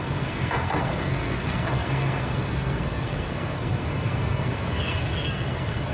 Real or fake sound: fake